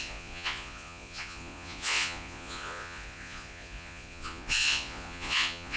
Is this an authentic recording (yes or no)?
no